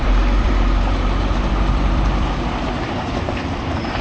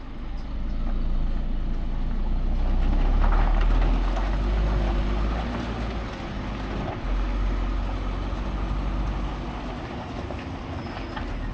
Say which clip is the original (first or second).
second